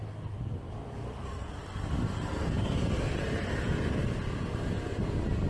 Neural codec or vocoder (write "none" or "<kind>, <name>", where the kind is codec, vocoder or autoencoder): none